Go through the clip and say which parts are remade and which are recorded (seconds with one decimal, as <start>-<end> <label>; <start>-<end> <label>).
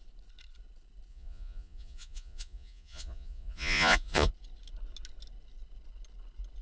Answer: 0.0-1.1 recorded; 1.1-4.3 remade; 4.3-6.6 recorded